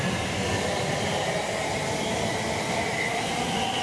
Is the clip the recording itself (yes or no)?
yes